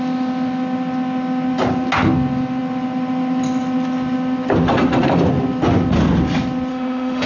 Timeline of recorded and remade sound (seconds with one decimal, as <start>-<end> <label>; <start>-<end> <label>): 0.0-6.7 recorded; 6.7-7.3 remade